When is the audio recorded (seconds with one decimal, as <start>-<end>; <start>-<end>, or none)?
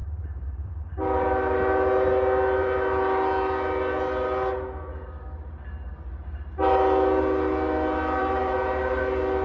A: 0.8-8.2; 9.0-9.4